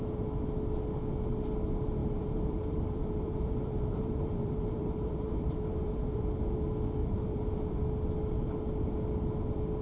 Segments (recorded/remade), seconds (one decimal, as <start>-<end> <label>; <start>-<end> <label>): 0.0-2.0 recorded; 2.0-6.2 remade; 6.2-7.0 recorded; 7.0-7.8 remade; 7.8-9.8 recorded